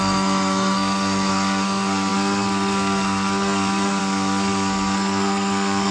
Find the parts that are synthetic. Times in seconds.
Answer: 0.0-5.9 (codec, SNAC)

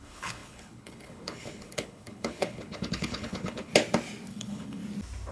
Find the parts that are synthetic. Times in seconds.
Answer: 0.0-3.7 (codec, HILCodec); 4.3-4.8

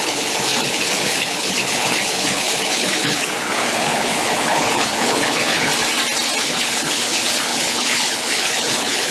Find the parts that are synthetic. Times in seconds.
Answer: 0.0-5.7 (codec, HILCodec); 6.4-9.1